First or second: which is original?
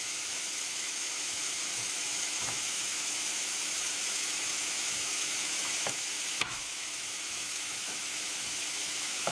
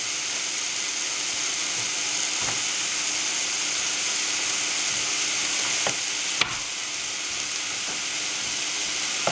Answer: second